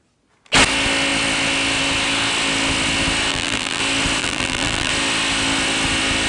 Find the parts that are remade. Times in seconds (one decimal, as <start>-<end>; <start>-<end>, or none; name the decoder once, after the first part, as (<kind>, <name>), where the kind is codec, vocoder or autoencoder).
3.3-3.8 (vocoder, BigVGAN v2); 4.2-4.9